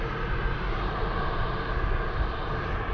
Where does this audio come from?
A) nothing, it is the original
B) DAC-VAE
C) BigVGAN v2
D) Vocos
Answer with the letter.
A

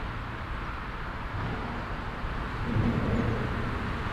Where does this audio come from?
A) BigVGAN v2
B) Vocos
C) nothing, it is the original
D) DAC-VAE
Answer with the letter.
C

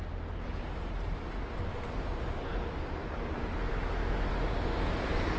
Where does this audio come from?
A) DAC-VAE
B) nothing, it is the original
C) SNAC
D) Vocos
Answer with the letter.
B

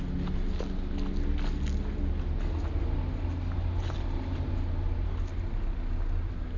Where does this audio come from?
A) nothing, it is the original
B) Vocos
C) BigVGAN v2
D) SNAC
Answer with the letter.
A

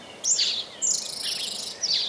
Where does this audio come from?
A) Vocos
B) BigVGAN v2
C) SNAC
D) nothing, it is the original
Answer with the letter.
D